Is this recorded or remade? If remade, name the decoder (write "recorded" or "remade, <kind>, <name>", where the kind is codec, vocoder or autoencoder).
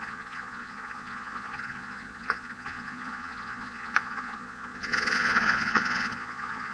remade, vocoder, Vocos